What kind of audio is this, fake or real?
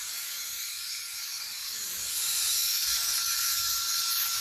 fake